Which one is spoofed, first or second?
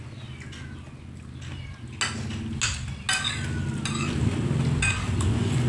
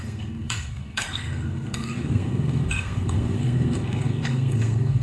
second